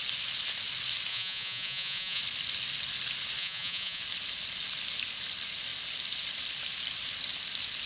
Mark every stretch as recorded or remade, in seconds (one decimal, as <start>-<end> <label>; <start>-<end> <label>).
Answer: 0.0-1.1 recorded; 1.1-2.2 remade; 2.2-3.4 recorded; 3.4-4.0 remade; 4.0-7.9 recorded

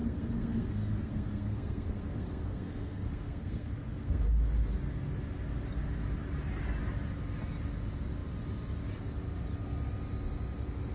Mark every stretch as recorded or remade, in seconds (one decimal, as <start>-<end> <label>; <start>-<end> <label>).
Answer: 0.0-4.2 remade; 4.2-10.9 recorded

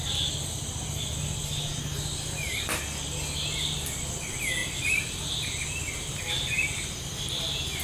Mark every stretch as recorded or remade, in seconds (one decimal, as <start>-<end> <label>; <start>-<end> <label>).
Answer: 0.0-7.8 recorded

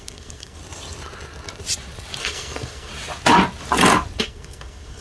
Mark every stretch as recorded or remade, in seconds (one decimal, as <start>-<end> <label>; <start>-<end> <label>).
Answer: 0.0-0.6 remade; 0.6-2.2 recorded; 2.2-2.9 remade; 2.9-4.2 recorded; 4.2-5.0 remade